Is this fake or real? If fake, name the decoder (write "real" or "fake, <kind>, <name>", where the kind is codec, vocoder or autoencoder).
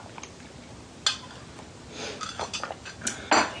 real